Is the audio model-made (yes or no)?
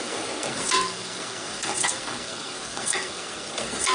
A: yes